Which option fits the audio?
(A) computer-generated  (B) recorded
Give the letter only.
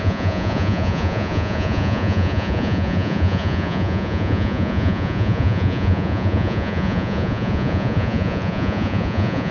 A